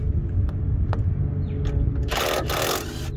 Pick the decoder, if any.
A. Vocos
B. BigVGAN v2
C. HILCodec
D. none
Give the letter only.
D